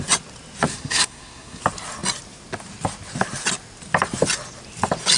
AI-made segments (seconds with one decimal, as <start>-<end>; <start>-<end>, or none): 0.7-1.6